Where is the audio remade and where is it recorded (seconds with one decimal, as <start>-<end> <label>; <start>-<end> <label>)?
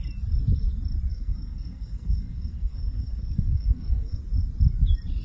0.0-1.1 recorded; 1.1-4.2 remade; 4.2-5.2 recorded